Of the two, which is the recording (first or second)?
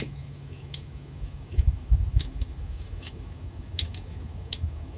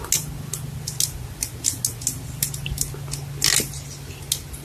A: second